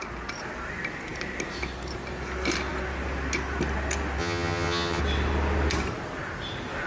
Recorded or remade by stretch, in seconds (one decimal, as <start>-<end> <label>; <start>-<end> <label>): 0.0-4.2 recorded; 4.2-5.0 remade; 5.0-6.9 recorded